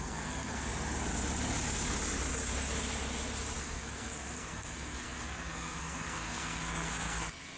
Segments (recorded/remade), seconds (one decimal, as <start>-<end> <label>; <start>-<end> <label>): 0.0-0.7 remade; 0.7-3.6 recorded; 3.6-7.6 remade